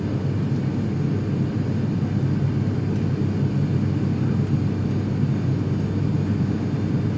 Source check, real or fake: real